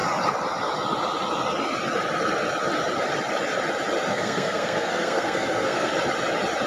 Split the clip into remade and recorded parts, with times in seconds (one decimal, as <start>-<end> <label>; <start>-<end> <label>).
0.0-4.1 recorded; 4.1-5.9 remade; 5.9-6.7 recorded